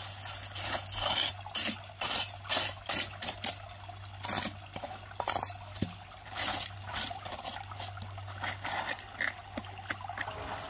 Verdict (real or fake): real